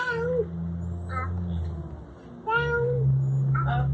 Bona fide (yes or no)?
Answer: yes